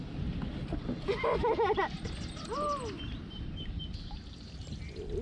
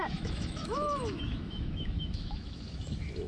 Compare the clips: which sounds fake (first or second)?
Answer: second